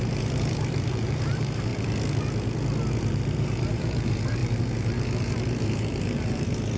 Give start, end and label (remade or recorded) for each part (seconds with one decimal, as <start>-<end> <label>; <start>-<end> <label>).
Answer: 0.0-1.7 remade; 1.7-2.9 recorded; 2.9-6.8 remade